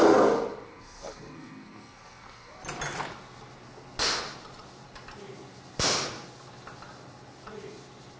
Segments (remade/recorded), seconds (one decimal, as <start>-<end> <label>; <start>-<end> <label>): 0.0-0.7 recorded; 0.7-2.5 remade; 2.5-8.2 recorded